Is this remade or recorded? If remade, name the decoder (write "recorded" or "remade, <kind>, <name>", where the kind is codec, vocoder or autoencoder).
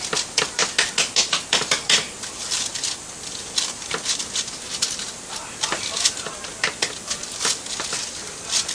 recorded